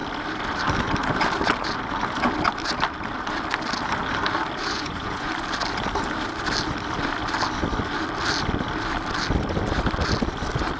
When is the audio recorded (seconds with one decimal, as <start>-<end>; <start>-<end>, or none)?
0.0-4.6; 5.3-10.8